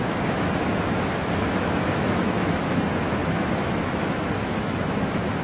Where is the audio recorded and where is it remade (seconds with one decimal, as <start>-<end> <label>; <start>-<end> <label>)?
0.0-5.4 remade